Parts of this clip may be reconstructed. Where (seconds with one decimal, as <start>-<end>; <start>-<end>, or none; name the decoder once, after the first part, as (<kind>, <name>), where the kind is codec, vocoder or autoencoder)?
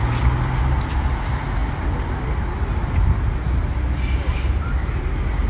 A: none